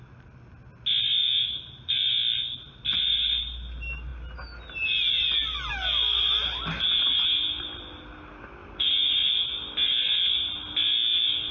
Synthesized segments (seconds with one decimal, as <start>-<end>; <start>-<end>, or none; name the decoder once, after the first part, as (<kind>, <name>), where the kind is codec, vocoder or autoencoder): 1.2-2.1 (vocoder, BigVGAN v2); 8.6-9.3